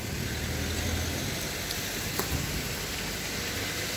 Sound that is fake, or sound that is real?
real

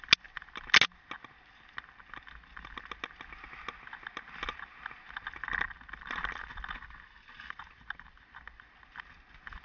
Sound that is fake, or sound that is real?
real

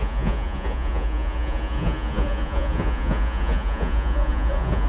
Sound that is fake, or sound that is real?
fake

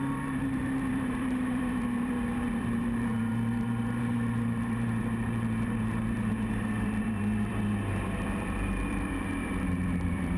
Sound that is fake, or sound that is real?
fake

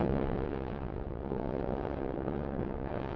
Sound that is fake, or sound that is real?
fake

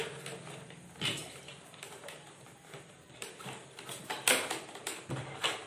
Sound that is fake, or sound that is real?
real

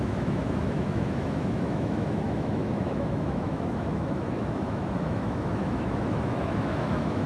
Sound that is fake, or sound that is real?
fake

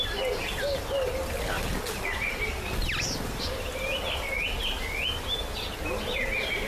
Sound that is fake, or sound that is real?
real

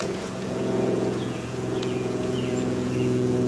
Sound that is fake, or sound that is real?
fake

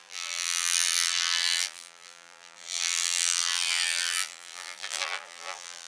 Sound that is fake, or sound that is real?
fake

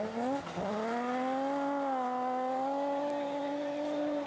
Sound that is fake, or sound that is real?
real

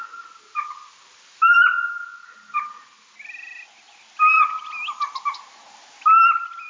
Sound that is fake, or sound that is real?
real